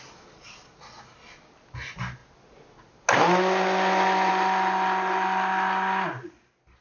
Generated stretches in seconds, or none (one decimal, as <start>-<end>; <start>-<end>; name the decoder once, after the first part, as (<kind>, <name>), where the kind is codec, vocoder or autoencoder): none